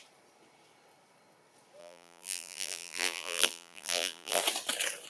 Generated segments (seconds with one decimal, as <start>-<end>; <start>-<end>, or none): 1.8-4.4